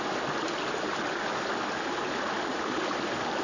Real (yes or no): yes